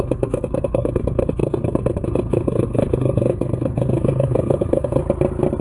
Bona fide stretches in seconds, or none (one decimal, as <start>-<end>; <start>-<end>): 5.0-5.6